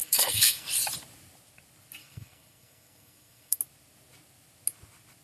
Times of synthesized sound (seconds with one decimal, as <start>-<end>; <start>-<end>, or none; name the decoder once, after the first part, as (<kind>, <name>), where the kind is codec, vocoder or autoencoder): 0.0-0.7 (codec, SNAC); 2.0-3.6